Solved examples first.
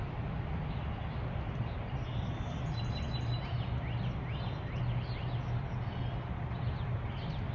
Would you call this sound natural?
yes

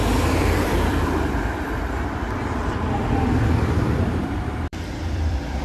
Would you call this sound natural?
no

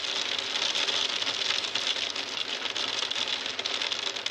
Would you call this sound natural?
yes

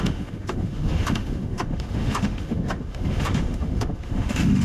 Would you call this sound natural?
no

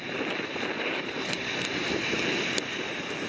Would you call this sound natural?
no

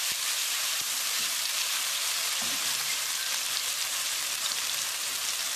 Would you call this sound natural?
no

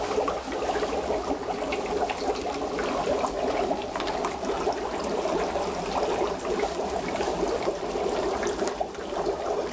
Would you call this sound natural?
yes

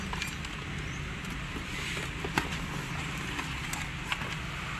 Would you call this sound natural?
yes